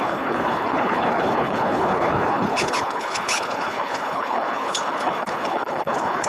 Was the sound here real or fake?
fake